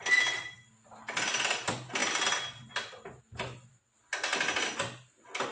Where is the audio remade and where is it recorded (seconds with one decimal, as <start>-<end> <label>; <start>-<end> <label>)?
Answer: 0.0-5.5 recorded